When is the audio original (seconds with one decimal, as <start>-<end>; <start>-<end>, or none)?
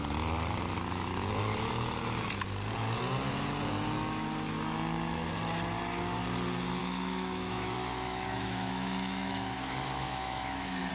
0.0-0.7; 1.3-6.8